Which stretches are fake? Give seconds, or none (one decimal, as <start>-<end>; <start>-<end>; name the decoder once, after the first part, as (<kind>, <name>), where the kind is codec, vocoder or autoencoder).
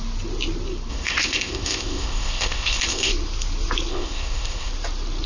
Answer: 0.9-3.1 (codec, ZipCodec); 3.9-4.7